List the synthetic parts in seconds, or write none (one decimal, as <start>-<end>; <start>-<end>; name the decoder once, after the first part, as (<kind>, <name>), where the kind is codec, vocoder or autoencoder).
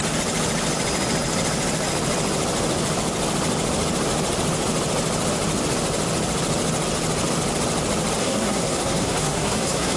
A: 8.2-10.0 (codec, SNAC)